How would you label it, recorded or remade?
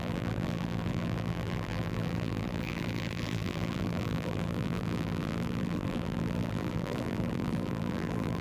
remade